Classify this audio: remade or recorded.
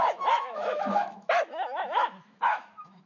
remade